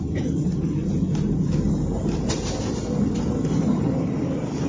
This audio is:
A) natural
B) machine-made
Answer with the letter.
A